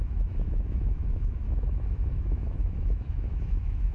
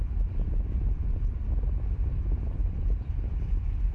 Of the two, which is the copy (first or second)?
first